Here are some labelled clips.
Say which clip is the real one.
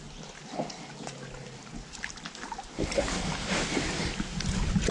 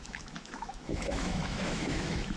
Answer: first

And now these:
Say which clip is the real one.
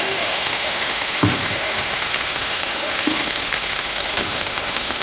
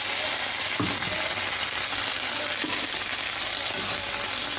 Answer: second